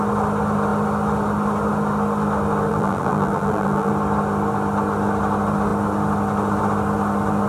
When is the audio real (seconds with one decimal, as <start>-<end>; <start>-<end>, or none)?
0.0-2.7; 3.9-7.5